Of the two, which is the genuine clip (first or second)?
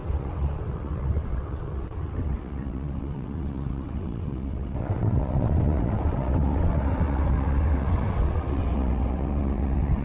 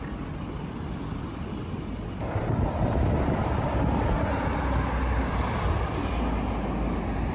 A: second